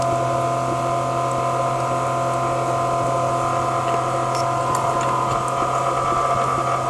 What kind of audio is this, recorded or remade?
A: recorded